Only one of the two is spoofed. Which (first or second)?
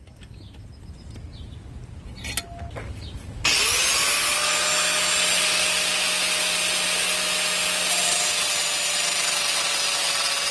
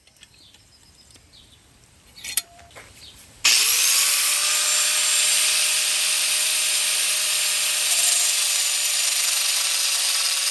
second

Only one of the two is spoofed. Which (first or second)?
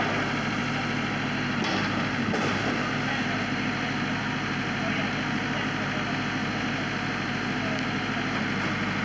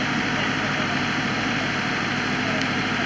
second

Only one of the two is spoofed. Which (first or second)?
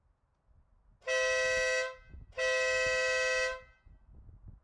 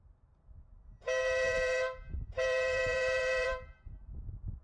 second